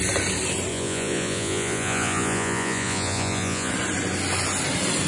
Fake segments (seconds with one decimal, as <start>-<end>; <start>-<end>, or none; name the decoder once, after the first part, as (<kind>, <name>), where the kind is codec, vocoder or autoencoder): 0.7-3.7 (vocoder, Vocos)